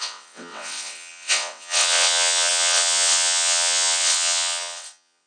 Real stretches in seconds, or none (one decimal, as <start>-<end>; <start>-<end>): none